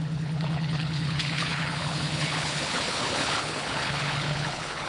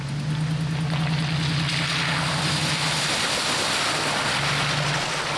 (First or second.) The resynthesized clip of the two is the first